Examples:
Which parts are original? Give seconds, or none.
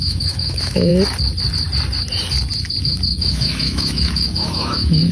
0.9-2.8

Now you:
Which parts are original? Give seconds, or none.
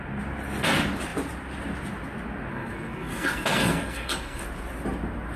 0.0-2.5; 4.4-5.4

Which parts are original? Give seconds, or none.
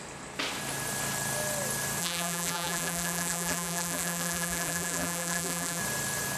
0.0-2.0; 5.8-6.4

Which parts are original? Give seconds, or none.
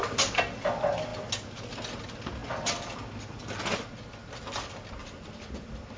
0.0-6.0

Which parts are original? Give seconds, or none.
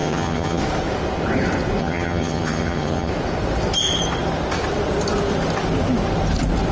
0.6-1.8; 3.1-6.7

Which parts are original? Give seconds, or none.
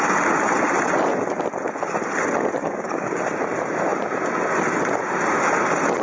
0.0-2.6; 3.2-6.0